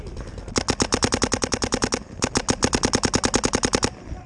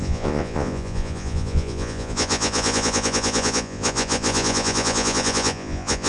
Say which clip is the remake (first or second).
second